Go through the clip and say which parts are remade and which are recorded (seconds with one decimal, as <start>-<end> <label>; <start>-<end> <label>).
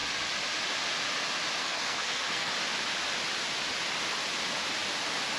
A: 0.0-1.6 recorded; 1.6-2.5 remade; 2.5-5.4 recorded